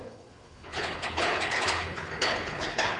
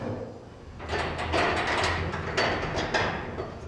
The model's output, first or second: first